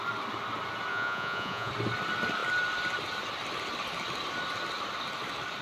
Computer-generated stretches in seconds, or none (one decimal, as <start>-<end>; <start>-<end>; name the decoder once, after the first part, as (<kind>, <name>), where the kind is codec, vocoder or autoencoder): 0.9-1.7 (vocoder, Vocos)